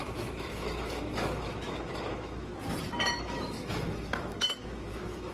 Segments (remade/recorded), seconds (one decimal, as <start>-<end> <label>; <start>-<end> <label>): 0.0-2.5 remade; 2.5-3.2 recorded; 3.2-5.3 remade